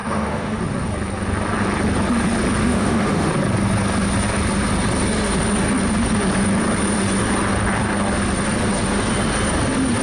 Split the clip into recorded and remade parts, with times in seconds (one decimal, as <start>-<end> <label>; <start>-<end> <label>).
0.0-0.6 remade; 0.6-2.6 recorded; 2.6-3.3 remade; 3.3-10.0 recorded